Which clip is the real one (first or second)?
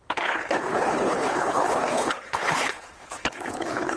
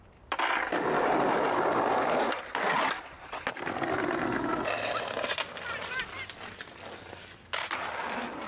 second